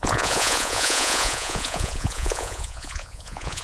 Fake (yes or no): yes